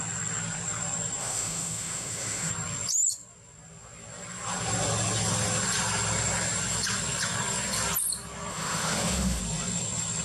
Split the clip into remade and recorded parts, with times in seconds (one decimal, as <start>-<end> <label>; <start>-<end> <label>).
0.0-1.2 recorded; 1.2-2.5 remade; 2.5-8.5 recorded; 8.5-9.4 remade; 9.4-10.2 recorded